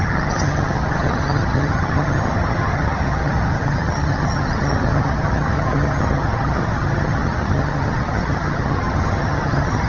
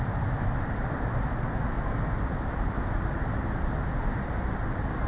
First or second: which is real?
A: second